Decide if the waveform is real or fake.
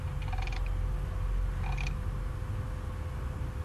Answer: real